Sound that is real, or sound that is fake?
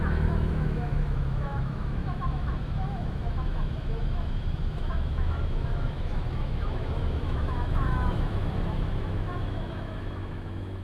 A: fake